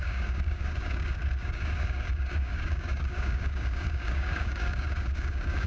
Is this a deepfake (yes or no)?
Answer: yes